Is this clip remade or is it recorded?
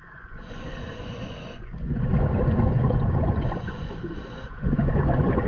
remade